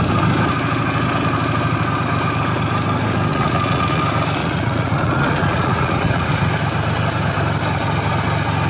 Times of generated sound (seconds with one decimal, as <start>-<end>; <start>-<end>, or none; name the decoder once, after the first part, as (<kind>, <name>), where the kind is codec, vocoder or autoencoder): 3.3-4.0 (vocoder, Vocos); 4.4-6.5